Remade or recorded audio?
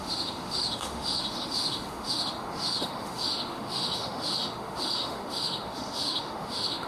remade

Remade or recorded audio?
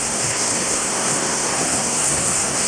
remade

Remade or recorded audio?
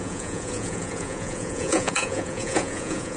remade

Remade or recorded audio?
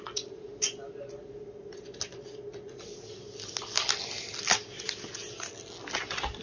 recorded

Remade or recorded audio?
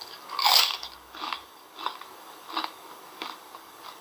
remade